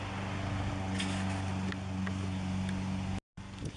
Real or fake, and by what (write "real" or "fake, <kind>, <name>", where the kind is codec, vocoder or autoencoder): real